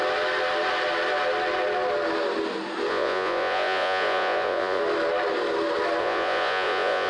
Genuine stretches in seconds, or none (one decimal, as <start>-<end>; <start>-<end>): 0.0-2.9; 4.8-6.0